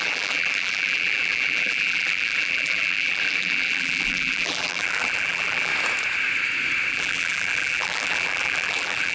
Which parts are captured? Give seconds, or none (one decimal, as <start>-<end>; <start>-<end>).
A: 5.7-6.9